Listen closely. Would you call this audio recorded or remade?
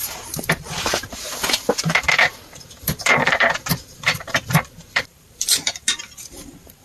remade